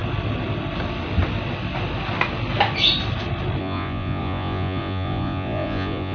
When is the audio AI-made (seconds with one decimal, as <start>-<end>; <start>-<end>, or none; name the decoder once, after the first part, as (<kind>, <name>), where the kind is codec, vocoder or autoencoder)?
3.6-6.1 (vocoder, Vocos)